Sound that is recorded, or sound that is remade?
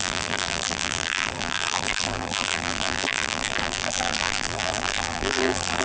remade